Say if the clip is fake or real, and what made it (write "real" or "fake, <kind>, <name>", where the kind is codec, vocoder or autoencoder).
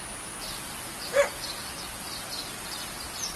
real